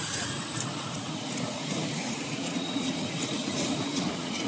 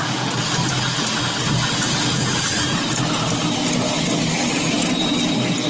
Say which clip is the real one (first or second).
second